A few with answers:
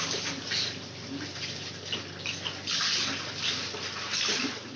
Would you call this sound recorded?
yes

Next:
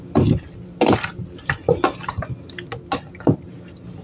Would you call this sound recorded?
yes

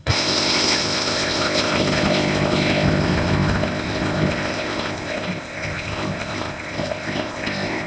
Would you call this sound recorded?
no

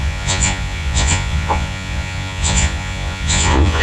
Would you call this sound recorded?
no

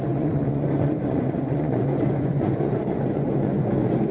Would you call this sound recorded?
no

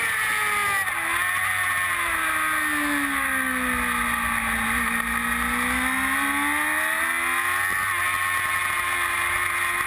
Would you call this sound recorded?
yes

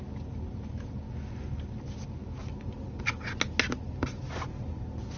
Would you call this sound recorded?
yes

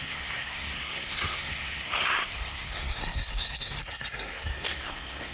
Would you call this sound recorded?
no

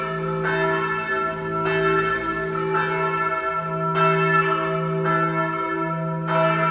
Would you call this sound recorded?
yes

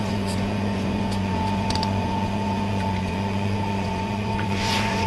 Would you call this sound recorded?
no